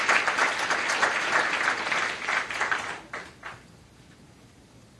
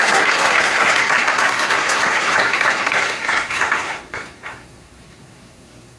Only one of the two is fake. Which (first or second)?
second